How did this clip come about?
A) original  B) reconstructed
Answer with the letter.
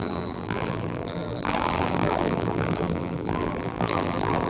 B